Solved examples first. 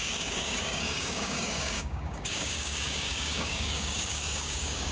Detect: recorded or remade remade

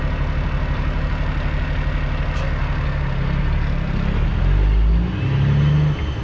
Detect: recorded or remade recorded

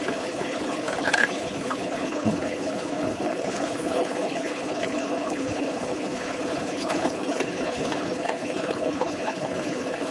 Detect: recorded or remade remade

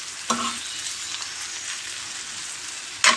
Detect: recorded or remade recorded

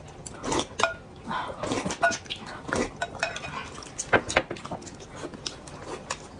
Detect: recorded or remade recorded